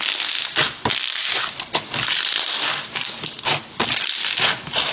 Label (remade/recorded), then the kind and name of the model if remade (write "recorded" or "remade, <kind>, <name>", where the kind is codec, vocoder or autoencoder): recorded